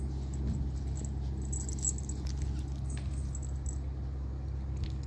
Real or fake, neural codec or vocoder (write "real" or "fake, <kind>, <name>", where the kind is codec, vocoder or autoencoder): real